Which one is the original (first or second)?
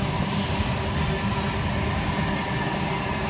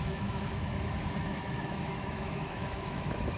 first